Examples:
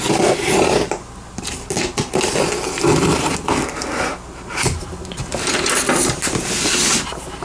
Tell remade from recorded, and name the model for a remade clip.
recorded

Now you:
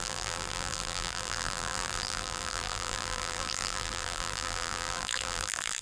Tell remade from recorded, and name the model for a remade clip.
remade, vocoder, BigVGAN v2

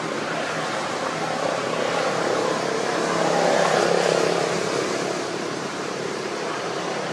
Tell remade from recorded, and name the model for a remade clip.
remade, vocoder, BigVGAN v2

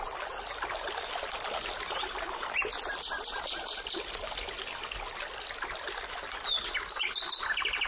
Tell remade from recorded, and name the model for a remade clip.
remade, vocoder, BigVGAN v2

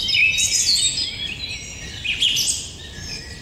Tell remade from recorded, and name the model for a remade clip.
recorded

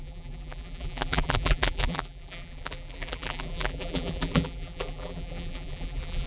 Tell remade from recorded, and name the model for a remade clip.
remade, vocoder, BigVGAN v2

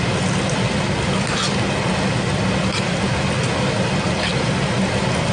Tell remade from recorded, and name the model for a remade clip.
recorded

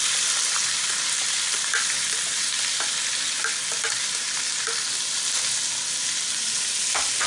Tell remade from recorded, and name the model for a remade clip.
recorded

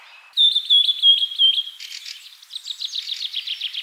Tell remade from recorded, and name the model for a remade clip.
recorded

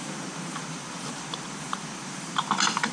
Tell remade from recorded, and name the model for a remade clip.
remade, vocoder, BigVGAN v2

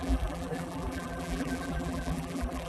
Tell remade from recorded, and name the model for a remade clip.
remade, vocoder, BigVGAN v2